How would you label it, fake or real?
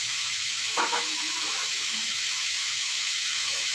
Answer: fake